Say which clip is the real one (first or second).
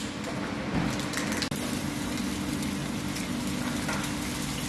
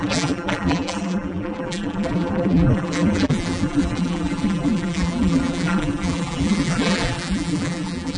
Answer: first